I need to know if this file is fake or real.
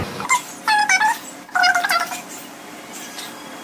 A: real